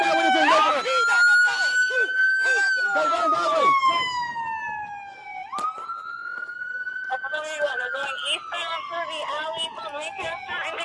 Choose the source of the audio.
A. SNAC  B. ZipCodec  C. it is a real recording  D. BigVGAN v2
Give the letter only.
C